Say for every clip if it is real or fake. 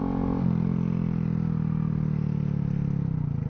real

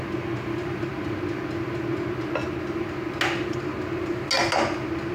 real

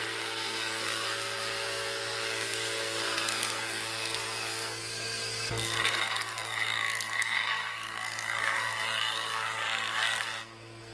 fake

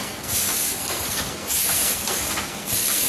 fake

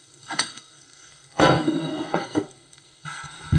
fake